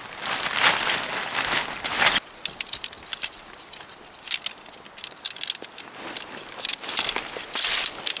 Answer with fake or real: real